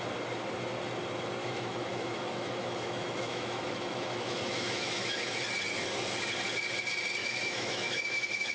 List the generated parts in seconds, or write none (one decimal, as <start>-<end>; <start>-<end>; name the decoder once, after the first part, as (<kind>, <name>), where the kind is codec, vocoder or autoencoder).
1.4-5.4 (autoencoder, DAC-VAE); 7.2-8.5